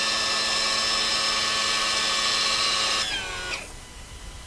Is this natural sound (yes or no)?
yes